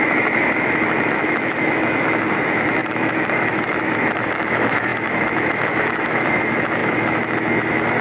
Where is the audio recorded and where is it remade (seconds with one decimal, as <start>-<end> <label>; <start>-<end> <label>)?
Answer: 0.0-8.0 remade